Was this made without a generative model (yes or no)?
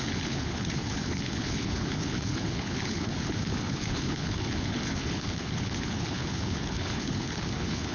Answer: no